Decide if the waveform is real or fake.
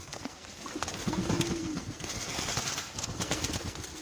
fake